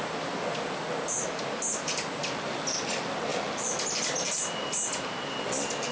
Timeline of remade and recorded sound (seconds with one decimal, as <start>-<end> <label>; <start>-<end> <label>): 0.0-5.9 recorded